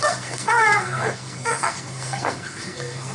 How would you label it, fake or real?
fake